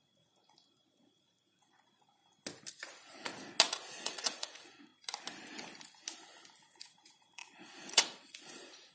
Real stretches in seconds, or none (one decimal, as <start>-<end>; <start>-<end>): 2.2-2.7; 3.3-3.9; 4.9-6.8